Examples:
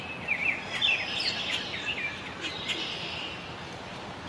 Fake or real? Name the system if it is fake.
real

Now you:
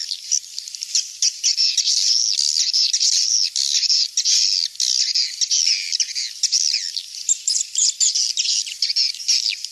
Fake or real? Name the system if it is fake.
fake, vocoder, BigVGAN v2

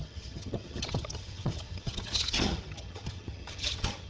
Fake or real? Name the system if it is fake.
fake, vocoder, HiFi-GAN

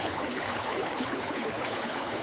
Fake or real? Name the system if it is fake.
fake, codec, HILCodec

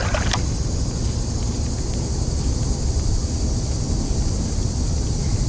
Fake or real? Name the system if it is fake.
real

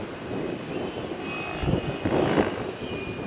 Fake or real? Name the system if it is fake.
real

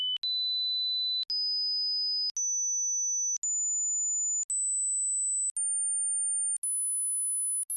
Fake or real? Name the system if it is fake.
real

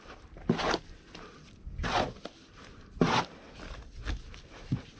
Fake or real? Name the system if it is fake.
real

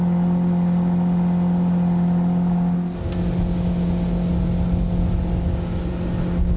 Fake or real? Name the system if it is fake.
real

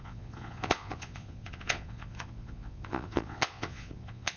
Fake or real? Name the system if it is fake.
fake, vocoder, Vocos